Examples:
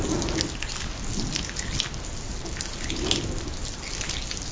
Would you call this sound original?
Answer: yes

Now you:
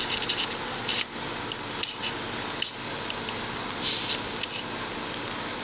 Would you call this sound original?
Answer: yes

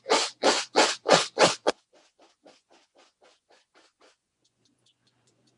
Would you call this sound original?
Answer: no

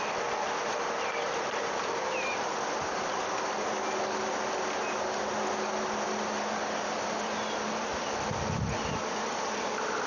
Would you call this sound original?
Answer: yes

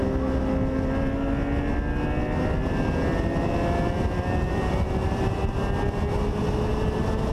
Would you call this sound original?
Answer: yes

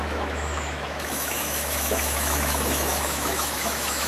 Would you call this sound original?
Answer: no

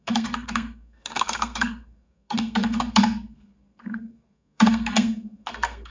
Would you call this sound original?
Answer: no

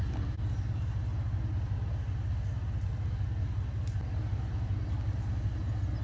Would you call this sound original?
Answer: yes